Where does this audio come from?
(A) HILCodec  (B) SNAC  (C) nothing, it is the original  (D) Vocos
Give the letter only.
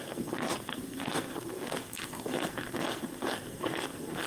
B